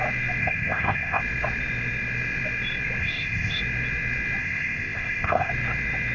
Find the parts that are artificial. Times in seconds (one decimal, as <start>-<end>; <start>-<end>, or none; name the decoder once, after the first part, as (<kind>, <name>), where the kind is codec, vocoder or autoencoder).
0.4-1.2 (codec, ZipCodec); 3.0-3.6; 4.4-5.5